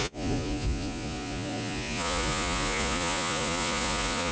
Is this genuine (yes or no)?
no